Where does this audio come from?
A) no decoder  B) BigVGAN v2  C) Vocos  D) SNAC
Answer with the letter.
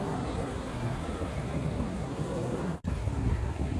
D